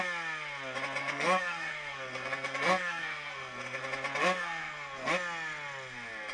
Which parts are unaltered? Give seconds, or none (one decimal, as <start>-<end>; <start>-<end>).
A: 0.0-1.0; 3.8-4.2; 5.1-6.3